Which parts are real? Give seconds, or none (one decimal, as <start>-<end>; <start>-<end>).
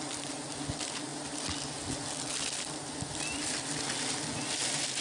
0.0-5.0